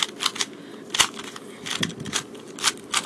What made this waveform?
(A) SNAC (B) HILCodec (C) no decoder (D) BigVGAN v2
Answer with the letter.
C